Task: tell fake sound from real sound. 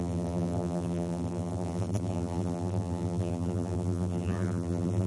fake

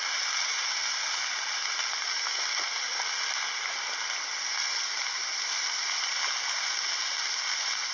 real